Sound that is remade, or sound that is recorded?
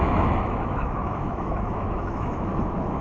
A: remade